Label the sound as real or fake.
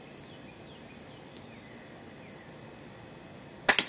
real